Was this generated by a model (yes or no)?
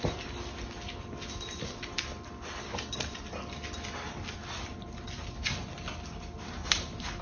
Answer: no